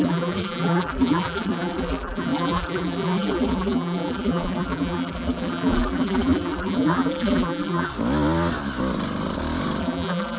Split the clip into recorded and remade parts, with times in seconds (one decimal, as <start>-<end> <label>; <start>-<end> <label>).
0.0-7.9 remade; 7.9-9.8 recorded; 9.8-10.4 remade